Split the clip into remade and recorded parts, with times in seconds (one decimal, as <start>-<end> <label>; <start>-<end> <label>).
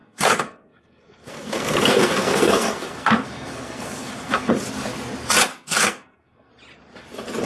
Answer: 0.0-4.5 remade; 4.5-5.5 recorded; 5.5-6.5 remade; 6.5-7.5 recorded